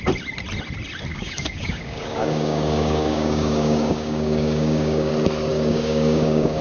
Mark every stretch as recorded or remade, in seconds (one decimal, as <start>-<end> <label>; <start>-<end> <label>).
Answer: 0.0-1.1 recorded; 1.1-5.1 remade; 5.1-5.5 recorded; 5.5-6.6 remade